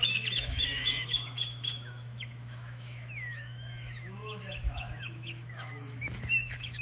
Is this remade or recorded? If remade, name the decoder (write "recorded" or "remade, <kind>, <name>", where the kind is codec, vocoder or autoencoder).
remade, autoencoder, DAC-VAE